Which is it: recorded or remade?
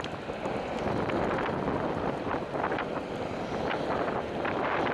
recorded